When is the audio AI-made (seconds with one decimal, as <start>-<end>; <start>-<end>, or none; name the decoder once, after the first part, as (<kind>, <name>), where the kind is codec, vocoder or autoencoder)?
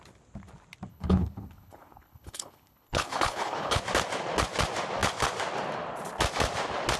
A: 0.9-3.8 (codec, HILCodec)